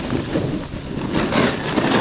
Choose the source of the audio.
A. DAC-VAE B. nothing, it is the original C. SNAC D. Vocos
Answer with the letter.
B